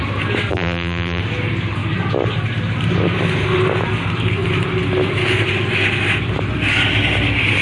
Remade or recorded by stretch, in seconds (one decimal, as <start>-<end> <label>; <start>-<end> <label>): 0.0-0.5 recorded; 0.5-1.2 remade; 1.2-7.6 recorded